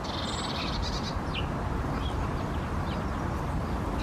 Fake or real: real